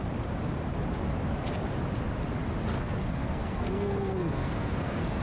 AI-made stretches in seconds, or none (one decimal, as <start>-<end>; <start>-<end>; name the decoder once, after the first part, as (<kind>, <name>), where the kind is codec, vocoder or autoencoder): 2.7-5.2 (codec, SNAC)